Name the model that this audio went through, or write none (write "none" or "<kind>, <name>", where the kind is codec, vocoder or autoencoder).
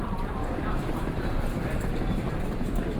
vocoder, BigVGAN v2